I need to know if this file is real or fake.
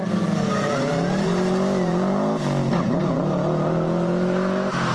real